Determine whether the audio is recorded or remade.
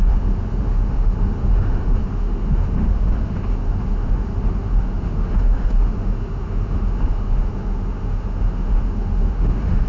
remade